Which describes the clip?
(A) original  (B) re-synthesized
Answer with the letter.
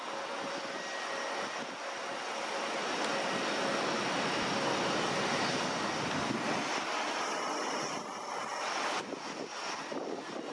A